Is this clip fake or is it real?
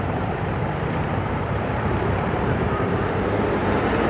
fake